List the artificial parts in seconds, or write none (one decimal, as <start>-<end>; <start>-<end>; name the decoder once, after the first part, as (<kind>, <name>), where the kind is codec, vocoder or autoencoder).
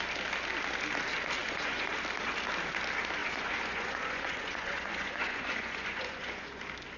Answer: 1.4-1.9 (vocoder, Vocos); 3.2-6.6